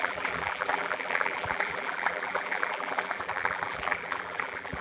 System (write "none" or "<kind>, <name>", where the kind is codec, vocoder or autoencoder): vocoder, BigVGAN v2